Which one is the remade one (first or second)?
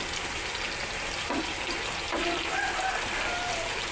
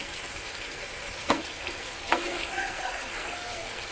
second